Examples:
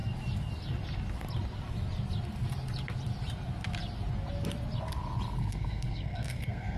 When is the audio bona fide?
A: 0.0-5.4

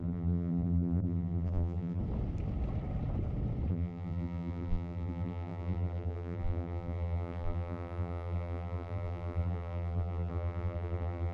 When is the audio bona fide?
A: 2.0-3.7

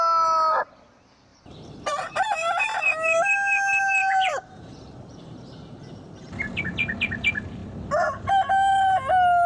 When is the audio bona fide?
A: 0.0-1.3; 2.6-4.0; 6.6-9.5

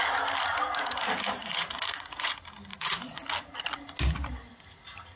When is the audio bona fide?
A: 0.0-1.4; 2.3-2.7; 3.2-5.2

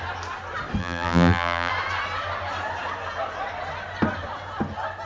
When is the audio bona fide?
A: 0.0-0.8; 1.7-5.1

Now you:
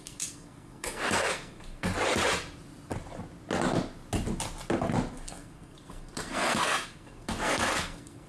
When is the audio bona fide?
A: 1.9-5.1